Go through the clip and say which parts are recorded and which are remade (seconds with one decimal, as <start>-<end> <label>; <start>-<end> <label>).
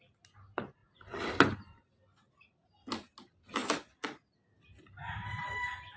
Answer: 0.0-6.0 recorded